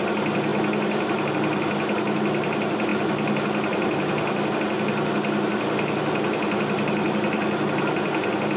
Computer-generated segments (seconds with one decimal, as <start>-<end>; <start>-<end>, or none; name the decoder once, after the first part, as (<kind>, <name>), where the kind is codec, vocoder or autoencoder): none